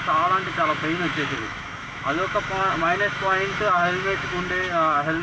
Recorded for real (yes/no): no